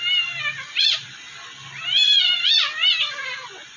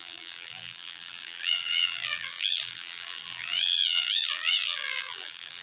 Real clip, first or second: first